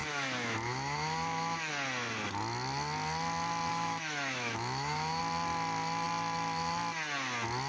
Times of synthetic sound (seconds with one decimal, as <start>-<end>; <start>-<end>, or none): 0.0-1.7; 3.7-5.2